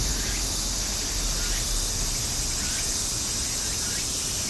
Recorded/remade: recorded